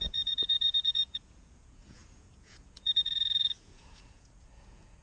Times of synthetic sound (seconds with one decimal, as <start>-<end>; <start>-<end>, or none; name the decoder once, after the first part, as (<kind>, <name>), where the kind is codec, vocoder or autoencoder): 0.0-5.0 (vocoder, Vocos)